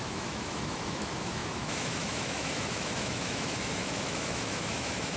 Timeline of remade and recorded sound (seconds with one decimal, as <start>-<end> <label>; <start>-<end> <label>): 0.0-5.2 remade